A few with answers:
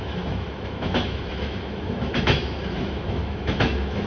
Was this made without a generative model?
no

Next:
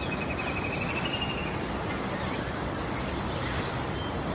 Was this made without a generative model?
yes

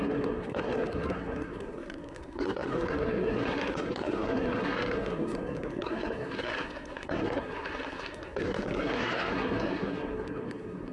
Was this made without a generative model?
no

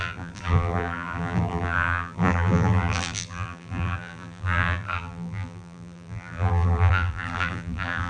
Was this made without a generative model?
no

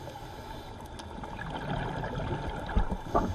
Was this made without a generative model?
yes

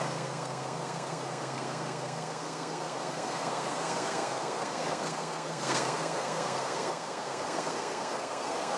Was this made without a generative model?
no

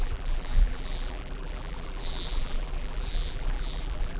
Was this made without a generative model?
no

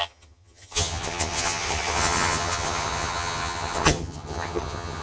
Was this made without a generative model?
no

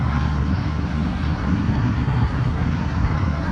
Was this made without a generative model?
no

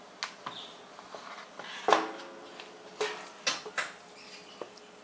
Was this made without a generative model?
yes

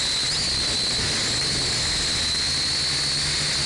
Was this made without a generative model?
yes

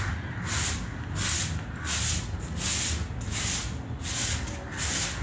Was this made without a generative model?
yes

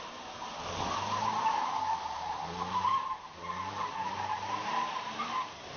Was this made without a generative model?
no